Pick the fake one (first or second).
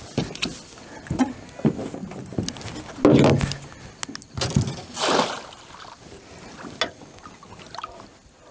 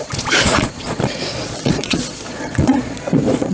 second